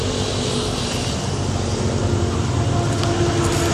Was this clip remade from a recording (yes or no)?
no